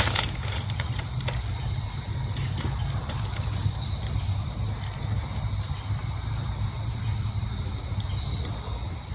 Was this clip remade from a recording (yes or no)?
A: no